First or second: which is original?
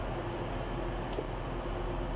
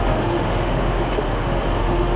first